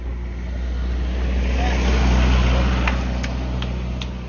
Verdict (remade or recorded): recorded